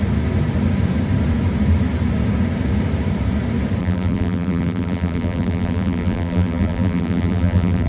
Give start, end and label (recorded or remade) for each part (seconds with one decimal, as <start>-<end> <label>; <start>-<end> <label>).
0.0-3.8 recorded; 3.8-7.9 remade